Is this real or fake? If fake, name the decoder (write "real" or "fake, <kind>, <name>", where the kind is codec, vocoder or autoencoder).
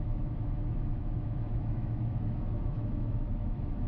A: fake, autoencoder, DAC-VAE